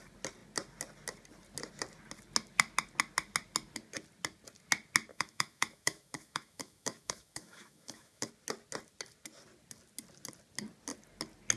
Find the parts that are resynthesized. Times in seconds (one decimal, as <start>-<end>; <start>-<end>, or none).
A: 5.1-8.3